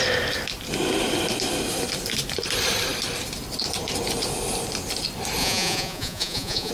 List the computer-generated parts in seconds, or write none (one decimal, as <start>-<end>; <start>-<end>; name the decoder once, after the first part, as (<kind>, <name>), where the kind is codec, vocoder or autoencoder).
5.4-6.7 (vocoder, Vocos)